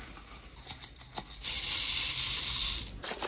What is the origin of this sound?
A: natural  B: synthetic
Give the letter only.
A